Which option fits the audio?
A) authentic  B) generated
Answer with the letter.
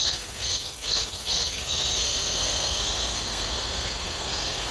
B